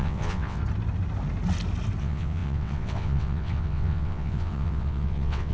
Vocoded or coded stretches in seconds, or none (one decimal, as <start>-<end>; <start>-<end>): 0.0-0.6; 2.0-5.5